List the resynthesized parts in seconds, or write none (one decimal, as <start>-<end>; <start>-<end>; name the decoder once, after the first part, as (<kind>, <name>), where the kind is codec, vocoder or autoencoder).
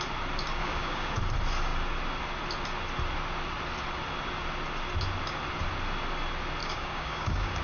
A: 0.6-1.2 (codec, DAC); 6.6-7.6